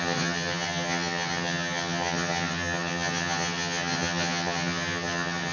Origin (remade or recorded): remade